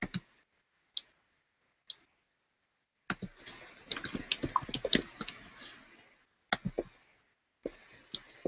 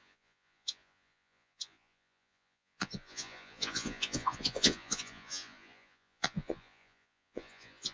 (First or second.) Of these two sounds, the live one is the first